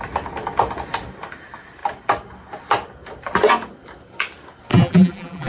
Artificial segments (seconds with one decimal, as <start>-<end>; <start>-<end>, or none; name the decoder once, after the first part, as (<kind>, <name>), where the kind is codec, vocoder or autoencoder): 4.7-5.5 (vocoder, BigVGAN v2)